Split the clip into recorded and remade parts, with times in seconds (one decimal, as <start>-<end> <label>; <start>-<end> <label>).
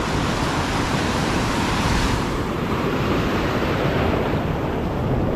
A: 0.0-0.7 recorded; 0.7-3.9 remade; 3.9-5.4 recorded